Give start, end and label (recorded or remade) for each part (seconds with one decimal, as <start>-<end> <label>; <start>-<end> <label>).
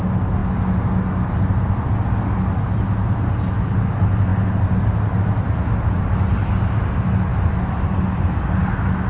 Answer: 0.0-9.1 recorded